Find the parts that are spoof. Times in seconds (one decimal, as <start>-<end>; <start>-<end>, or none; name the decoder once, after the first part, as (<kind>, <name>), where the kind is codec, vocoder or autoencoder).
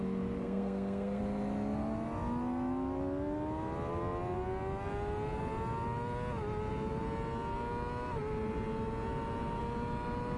0.4-1.2 (codec, SNAC)